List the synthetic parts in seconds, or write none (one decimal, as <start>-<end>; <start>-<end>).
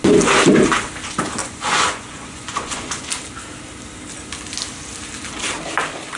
1.4-3.1